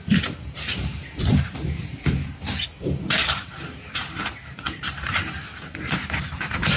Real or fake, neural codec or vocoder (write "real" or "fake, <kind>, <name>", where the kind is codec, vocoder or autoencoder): fake, vocoder, BigVGAN v2